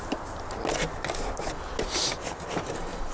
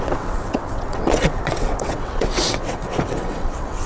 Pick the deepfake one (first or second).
second